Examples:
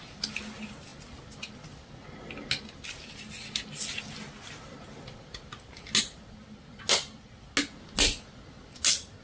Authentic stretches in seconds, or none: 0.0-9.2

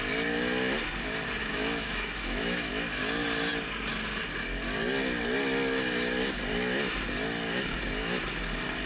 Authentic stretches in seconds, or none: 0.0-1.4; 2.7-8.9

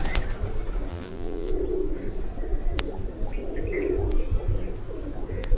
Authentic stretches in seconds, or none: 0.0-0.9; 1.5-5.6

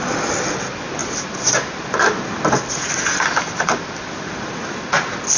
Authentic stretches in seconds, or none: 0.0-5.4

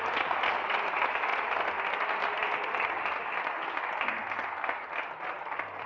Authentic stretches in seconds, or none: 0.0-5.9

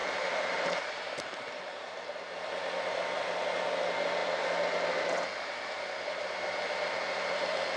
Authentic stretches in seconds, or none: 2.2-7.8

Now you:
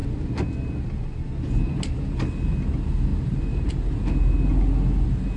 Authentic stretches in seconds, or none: 0.0-3.1; 3.7-5.4

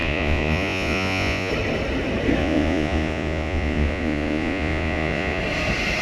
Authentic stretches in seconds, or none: 1.5-2.4; 5.4-6.0